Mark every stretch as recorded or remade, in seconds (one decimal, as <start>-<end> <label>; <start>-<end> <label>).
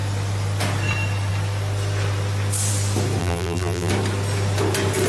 0.0-3.2 recorded; 3.2-3.9 remade; 3.9-5.1 recorded